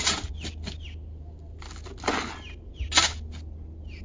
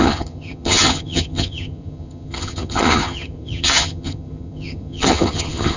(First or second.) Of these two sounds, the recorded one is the first